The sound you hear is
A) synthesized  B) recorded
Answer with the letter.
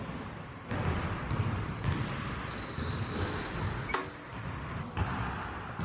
B